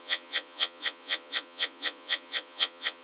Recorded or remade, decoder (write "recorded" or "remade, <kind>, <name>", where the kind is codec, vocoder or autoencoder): remade, vocoder, Vocos